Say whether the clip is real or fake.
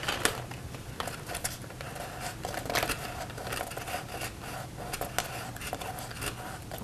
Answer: real